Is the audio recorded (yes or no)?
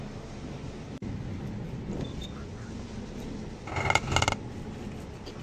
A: yes